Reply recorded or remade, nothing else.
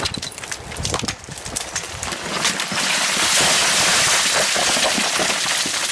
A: recorded